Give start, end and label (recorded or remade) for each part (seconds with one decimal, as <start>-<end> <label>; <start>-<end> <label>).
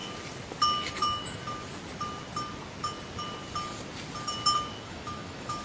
0.0-0.9 recorded; 0.9-1.4 remade; 1.4-4.8 recorded; 4.8-5.6 remade